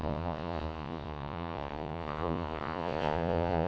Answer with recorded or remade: remade